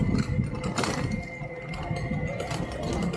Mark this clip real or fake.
real